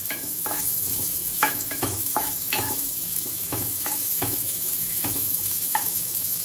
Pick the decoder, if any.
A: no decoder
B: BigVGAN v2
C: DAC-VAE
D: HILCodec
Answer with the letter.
C